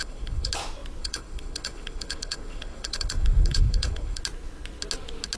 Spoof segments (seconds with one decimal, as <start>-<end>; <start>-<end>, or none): 0.0-0.5; 1.0-4.2